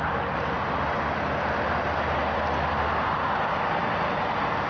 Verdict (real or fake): real